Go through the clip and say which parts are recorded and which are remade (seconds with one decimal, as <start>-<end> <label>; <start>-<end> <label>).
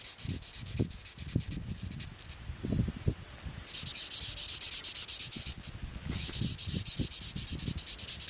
0.0-5.3 recorded; 5.3-6.4 remade; 6.4-8.3 recorded